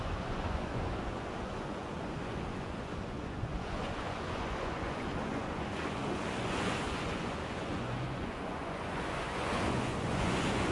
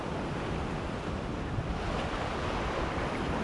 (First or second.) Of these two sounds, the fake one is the first